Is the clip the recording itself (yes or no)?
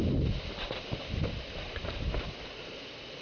yes